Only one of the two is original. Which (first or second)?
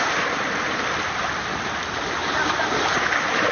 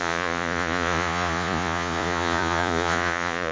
first